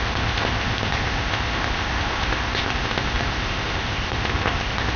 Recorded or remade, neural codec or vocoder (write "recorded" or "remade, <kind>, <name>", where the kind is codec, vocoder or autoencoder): remade, codec, ZipCodec